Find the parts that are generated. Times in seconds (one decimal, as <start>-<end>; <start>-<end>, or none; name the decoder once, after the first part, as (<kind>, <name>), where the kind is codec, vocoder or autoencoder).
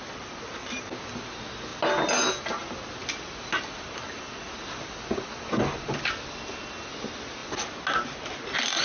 none